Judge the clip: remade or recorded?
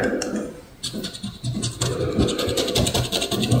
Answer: recorded